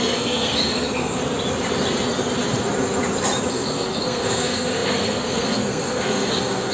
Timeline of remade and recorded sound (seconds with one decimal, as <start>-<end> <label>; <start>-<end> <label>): 0.0-1.2 remade; 1.2-3.5 recorded; 3.5-6.7 remade